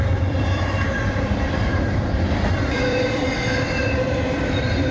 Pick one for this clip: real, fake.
fake